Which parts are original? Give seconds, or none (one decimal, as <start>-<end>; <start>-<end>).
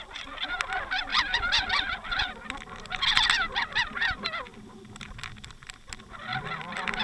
0.0-7.0